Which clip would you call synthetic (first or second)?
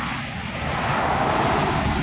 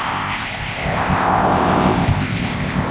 second